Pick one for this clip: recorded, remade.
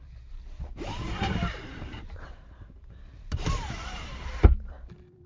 remade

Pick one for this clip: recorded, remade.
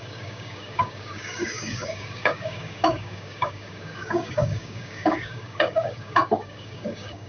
remade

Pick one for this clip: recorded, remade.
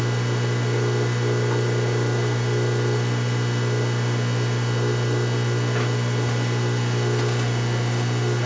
recorded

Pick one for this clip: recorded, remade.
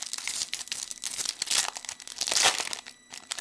recorded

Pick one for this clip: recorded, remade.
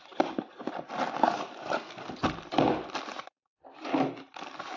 recorded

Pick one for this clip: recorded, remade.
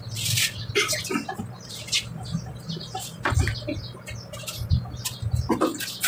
recorded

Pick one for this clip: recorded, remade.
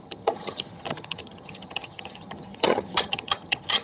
remade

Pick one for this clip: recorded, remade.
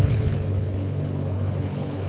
remade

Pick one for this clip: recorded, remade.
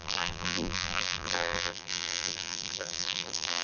remade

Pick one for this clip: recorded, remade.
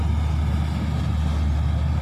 recorded